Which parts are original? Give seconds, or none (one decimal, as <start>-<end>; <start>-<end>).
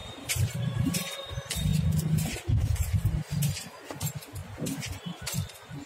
1.1-5.9